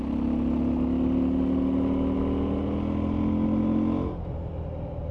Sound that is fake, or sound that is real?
real